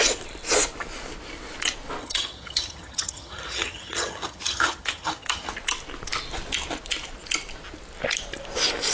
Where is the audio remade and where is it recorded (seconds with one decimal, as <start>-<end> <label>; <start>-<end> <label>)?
0.0-2.0 recorded; 2.0-5.5 remade; 5.5-8.9 recorded